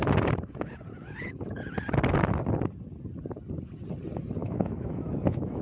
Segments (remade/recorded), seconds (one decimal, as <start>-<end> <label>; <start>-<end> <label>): 0.0-4.4 recorded; 4.4-5.6 remade